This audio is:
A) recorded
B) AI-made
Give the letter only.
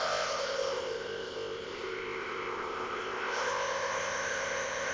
B